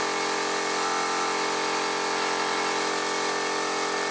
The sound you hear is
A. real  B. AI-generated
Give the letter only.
A